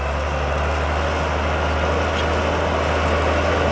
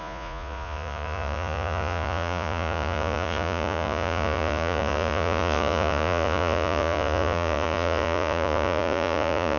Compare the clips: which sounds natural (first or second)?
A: first